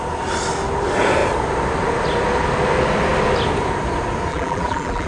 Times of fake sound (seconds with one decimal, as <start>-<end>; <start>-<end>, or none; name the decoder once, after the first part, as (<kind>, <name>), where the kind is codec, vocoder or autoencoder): 4.3-5.1 (vocoder, BigVGAN v2)